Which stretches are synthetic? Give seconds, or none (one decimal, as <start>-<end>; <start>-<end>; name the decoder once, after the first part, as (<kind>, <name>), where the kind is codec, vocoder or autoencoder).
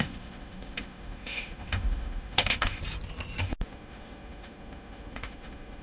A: 0.0-2.8 (autoencoder, DAC-VAE); 3.4-5.8